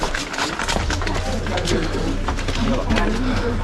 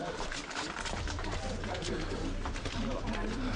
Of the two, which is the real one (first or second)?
first